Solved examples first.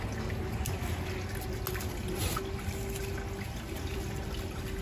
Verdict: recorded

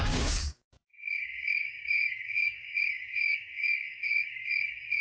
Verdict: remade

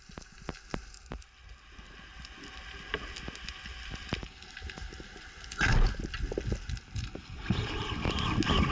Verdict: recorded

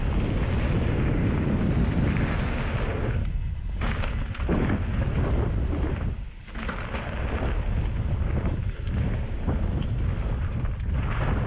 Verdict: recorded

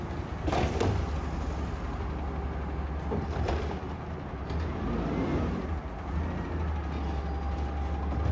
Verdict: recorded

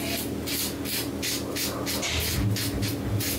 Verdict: recorded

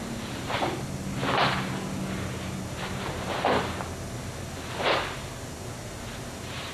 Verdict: recorded